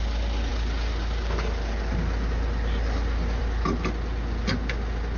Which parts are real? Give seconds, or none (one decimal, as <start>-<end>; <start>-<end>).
0.0-5.2

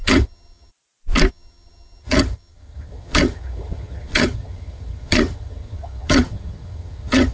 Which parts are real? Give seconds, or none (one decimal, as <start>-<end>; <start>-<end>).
0.7-1.3

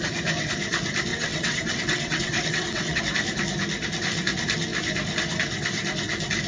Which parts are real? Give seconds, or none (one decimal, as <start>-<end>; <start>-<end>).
0.0-1.1; 3.0-6.5